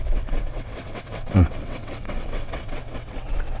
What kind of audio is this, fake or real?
fake